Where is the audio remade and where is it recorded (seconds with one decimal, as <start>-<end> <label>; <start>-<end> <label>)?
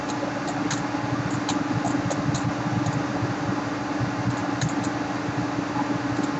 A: 0.0-6.4 recorded